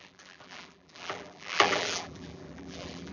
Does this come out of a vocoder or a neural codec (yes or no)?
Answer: yes